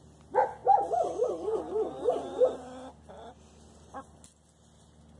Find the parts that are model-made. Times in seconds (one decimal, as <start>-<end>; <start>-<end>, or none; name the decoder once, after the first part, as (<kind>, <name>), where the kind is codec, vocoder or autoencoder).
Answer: none